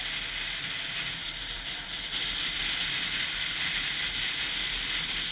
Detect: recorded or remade recorded